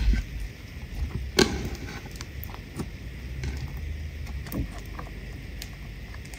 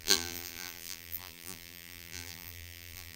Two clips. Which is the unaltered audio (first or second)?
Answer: first